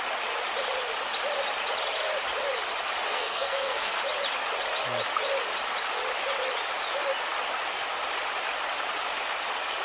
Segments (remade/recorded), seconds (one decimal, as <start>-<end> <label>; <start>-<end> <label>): 0.0-3.1 recorded; 3.1-4.0 remade; 4.0-9.8 recorded